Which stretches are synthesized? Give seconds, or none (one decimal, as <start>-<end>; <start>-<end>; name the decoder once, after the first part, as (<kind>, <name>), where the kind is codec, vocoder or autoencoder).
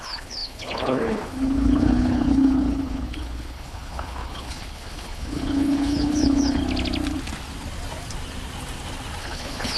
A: 0.0-6.6 (codec, HILCodec); 9.2-9.8